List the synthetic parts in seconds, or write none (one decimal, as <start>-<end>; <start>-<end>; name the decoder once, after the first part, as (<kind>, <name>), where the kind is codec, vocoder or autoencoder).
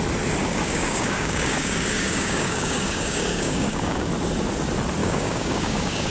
0.4-4.1 (codec, DAC); 5.0-6.1